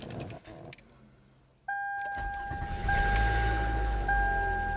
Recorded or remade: recorded